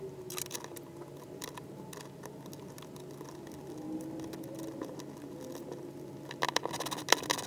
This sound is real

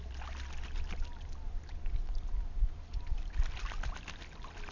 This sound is real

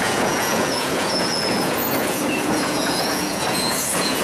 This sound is fake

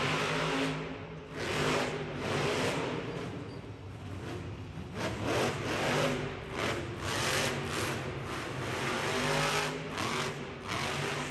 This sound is real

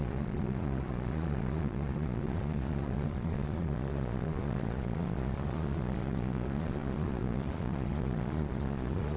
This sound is fake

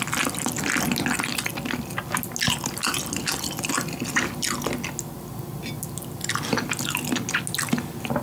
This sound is real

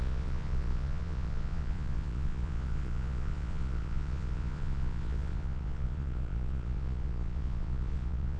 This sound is fake